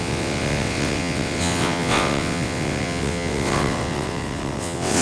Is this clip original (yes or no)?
no